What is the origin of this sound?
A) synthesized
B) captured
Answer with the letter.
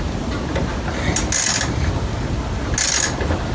B